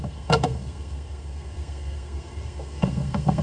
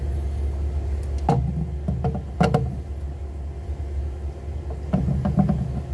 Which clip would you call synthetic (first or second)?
first